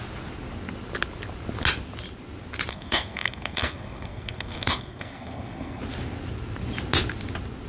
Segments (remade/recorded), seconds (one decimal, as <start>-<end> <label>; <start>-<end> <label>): 0.0-2.7 recorded; 2.7-5.8 remade; 5.8-7.7 recorded